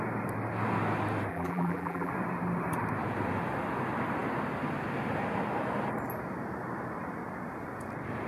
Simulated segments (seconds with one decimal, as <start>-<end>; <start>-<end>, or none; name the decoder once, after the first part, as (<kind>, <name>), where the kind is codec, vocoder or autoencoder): 1.3-2.1 (vocoder, BigVGAN v2)